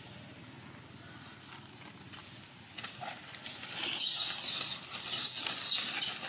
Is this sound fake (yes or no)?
no